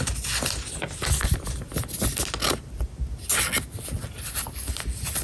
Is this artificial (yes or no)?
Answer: no